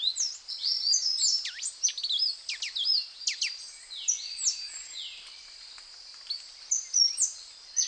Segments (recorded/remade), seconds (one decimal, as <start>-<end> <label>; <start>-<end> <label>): 0.0-0.6 recorded; 0.6-1.9 remade; 1.9-7.9 recorded